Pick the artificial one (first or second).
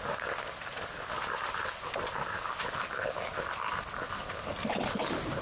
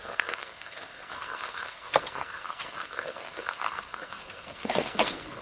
second